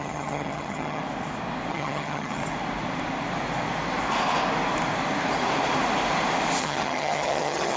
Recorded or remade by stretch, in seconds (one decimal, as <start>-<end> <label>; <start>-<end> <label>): 0.0-1.0 remade; 1.0-1.7 recorded; 1.7-2.4 remade; 2.4-6.6 recorded; 6.6-7.8 remade